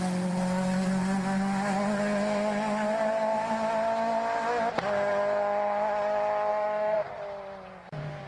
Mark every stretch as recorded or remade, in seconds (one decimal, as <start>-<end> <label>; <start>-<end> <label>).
0.0-6.5 recorded; 6.5-7.1 remade; 7.1-8.3 recorded